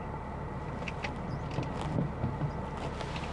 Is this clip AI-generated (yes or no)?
no